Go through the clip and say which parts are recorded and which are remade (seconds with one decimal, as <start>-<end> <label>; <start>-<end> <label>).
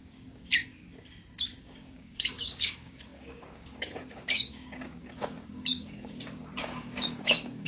0.0-0.5 remade; 0.5-1.6 recorded; 1.6-7.7 remade